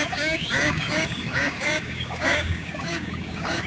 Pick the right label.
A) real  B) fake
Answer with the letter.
B